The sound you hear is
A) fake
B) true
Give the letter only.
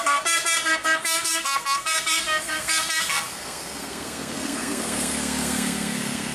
A